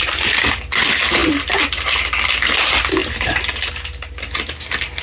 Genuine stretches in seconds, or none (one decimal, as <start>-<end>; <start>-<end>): 0.0-3.0; 3.7-5.0